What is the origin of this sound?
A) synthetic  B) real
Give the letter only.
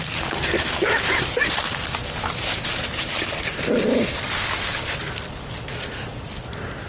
B